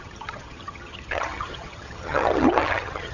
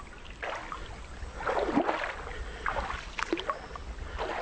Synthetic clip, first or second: first